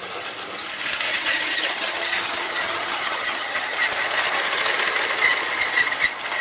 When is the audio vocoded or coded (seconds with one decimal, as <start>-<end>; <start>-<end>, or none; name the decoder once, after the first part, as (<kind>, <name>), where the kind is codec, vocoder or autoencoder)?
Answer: 1.1-3.9 (vocoder, HiFi-GAN)